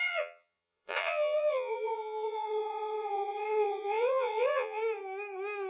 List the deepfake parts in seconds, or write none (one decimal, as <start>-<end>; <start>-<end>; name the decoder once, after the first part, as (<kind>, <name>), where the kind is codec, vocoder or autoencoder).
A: 0.0-4.8 (vocoder, Vocos)